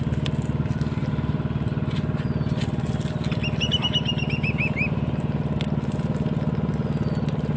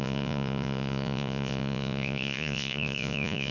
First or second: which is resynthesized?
second